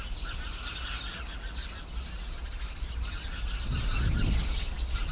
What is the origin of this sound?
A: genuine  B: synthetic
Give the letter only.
A